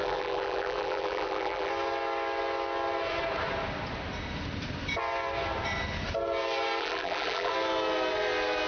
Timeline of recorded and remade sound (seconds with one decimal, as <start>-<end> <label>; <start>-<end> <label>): 0.0-1.7 remade; 1.7-6.8 recorded; 6.8-7.5 remade; 7.5-8.7 recorded

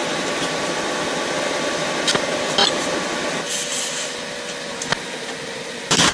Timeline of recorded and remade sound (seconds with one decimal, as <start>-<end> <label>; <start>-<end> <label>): 0.0-0.7 remade; 0.7-6.1 recorded

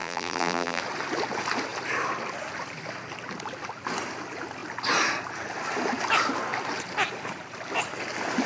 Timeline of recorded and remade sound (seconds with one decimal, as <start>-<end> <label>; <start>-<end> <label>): 0.0-0.8 remade; 0.8-8.5 recorded

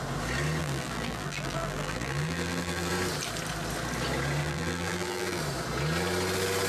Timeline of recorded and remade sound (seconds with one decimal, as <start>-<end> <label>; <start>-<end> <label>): 0.0-0.6 recorded; 0.6-2.9 remade; 2.9-4.4 recorded; 4.4-5.4 remade; 5.4-6.7 recorded

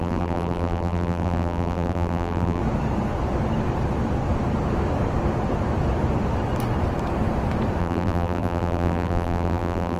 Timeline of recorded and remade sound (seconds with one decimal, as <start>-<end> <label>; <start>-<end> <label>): 0.0-2.6 remade; 2.6-7.8 recorded; 7.8-10.0 remade